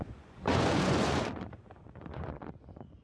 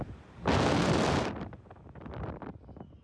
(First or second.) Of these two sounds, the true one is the second